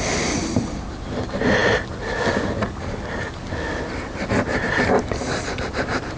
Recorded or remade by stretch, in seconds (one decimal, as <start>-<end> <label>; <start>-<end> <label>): 0.0-6.2 recorded